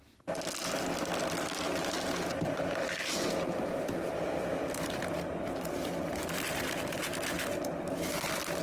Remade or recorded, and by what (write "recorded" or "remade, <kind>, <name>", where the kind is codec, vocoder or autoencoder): recorded